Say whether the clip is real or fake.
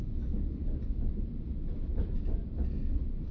real